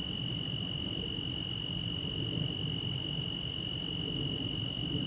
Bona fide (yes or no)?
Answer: yes